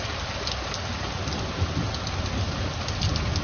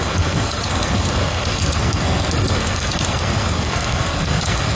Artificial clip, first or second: second